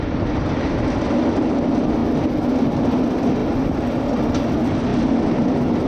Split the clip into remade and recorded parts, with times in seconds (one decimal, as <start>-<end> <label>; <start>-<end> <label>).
0.0-5.9 recorded